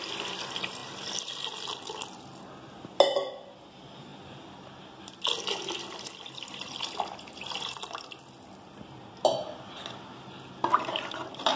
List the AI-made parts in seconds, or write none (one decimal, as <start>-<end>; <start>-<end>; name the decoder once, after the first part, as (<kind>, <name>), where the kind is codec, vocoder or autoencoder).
none